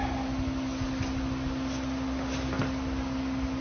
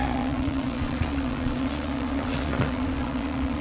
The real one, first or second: first